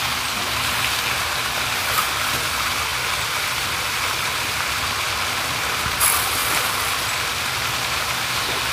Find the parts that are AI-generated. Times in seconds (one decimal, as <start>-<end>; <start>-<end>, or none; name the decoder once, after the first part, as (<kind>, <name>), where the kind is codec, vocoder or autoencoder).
none